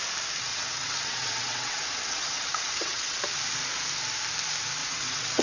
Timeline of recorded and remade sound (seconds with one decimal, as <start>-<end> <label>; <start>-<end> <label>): 0.0-0.5 recorded; 0.5-3.2 remade; 3.2-4.8 recorded; 4.8-5.4 remade